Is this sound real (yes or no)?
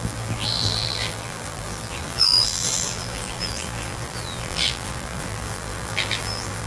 no